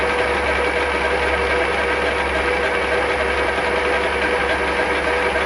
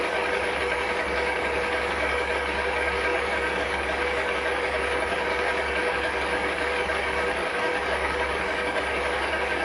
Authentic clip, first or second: first